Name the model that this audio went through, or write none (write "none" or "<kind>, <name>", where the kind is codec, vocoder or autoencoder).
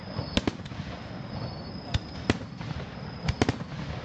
none